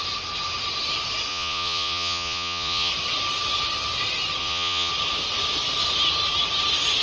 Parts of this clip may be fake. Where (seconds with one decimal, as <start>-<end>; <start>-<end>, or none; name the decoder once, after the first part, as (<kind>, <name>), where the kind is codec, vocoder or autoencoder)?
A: 1.3-2.9 (vocoder, Vocos); 4.4-4.9